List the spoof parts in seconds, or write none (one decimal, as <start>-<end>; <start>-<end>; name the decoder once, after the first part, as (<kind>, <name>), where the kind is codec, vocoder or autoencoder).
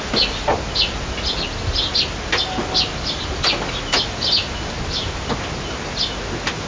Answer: none